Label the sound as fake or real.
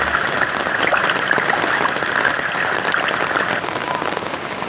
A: real